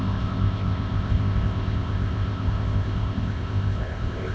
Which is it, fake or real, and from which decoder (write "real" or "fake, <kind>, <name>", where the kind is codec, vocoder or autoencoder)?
fake, codec, ZipCodec